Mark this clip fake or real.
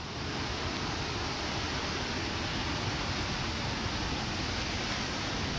real